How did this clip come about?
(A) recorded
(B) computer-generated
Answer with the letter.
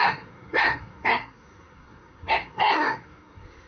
B